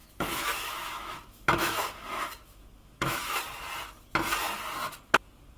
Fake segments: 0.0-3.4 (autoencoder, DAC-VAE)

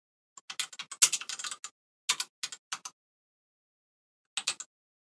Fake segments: none

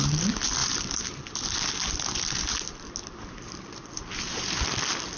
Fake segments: none

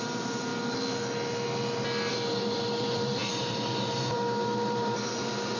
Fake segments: 0.0-0.5 (vocoder, BigVGAN v2); 2.1-5.6

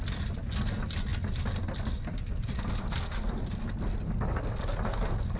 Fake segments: none

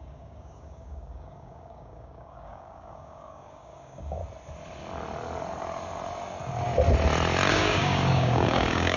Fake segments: 0.0-4.2 (codec, DAC); 7.5-9.0

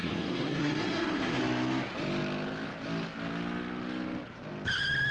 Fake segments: 0.0-1.4 (codec, SNAC)

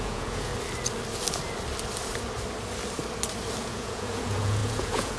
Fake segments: 0.0-0.5 (vocoder, Vocos); 3.6-5.2